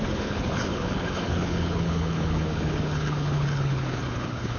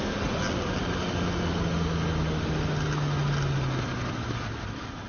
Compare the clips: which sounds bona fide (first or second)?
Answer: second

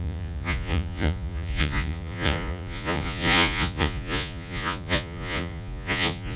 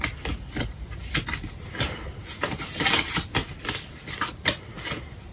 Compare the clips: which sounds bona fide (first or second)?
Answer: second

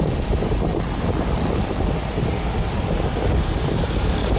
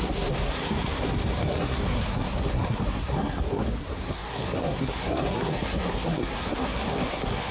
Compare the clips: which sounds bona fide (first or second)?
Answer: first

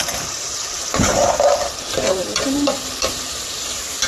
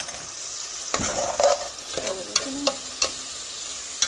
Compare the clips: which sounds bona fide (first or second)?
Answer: second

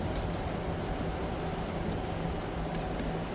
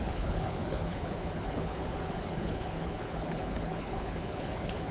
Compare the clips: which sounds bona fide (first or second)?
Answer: first